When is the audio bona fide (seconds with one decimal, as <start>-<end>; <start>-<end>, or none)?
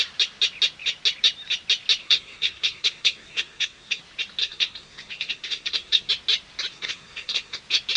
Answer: 0.0-2.0; 4.0-4.4; 6.1-6.7; 7.6-8.0